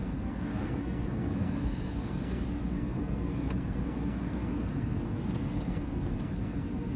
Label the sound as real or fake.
fake